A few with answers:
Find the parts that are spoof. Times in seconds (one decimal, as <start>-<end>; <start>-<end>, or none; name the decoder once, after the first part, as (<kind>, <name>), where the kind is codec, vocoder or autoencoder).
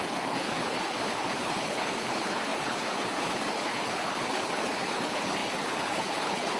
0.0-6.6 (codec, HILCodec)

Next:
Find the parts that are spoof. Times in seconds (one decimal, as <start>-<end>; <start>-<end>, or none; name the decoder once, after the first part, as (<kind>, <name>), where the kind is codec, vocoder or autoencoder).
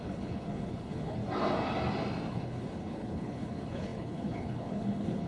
0.0-1.2 (codec, HILCodec); 2.3-5.3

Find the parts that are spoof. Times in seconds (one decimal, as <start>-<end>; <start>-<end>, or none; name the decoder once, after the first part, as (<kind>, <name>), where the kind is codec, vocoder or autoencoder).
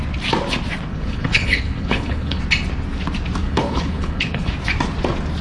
0.9-2.4 (codec, HILCodec); 3.4-4.5